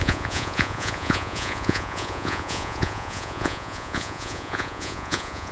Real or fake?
fake